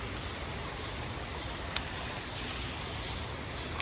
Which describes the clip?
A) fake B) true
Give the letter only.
B